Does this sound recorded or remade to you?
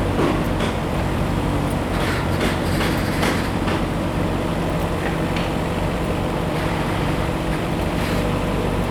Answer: remade